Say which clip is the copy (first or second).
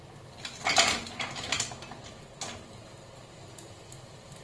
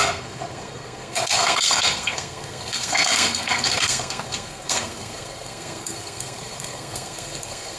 second